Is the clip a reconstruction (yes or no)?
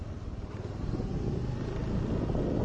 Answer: no